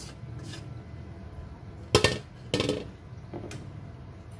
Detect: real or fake real